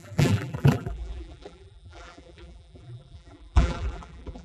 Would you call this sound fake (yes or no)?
yes